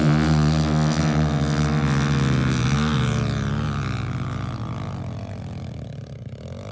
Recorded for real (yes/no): yes